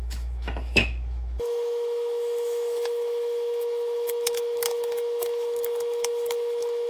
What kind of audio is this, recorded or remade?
remade